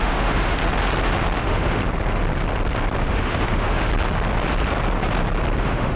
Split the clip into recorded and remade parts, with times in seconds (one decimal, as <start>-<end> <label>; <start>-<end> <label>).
0.0-0.6 remade; 0.6-1.4 recorded; 1.4-1.8 remade; 1.8-3.0 recorded; 3.0-3.9 remade; 3.9-5.6 recorded; 5.6-6.0 remade